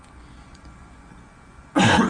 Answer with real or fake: fake